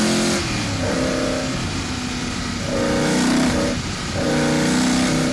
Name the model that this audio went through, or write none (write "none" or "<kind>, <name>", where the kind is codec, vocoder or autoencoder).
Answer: none